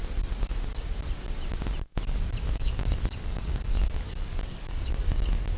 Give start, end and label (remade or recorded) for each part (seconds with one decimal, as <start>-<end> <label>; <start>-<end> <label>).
0.0-2.4 recorded; 2.4-5.6 remade